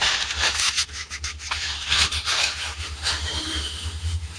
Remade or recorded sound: remade